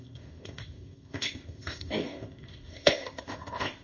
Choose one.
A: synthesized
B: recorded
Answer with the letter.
A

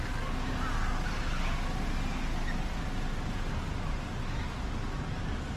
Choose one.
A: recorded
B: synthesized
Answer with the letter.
A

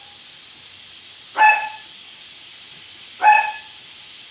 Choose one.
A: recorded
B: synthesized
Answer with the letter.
B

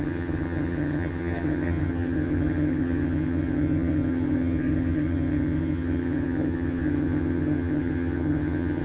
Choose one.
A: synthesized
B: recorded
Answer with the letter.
A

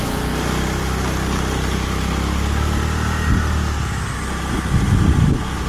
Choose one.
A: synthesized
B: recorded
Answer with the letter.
B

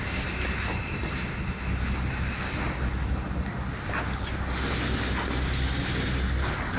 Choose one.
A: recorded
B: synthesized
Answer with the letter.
A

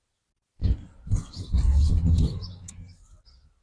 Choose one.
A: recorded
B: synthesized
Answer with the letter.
A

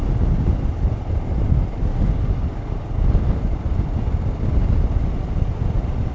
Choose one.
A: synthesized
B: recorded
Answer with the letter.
B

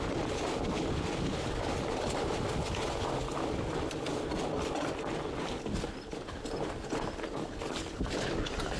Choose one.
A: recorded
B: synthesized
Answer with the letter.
A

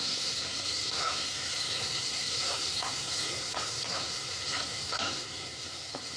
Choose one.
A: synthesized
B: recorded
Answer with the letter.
A